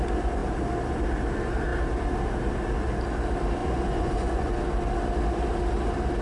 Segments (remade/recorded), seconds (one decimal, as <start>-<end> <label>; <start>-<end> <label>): 0.0-3.6 recorded; 3.6-4.7 remade; 4.7-6.2 recorded